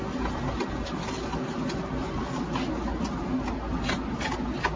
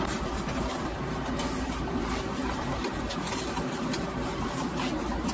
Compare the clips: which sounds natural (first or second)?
first